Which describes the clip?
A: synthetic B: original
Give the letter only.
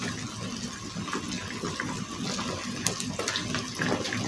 B